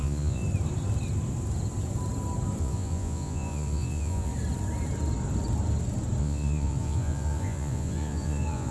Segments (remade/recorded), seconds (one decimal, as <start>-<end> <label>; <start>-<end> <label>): 0.0-0.4 remade; 0.4-2.6 recorded; 2.6-4.3 remade; 4.3-6.2 recorded; 6.2-8.7 remade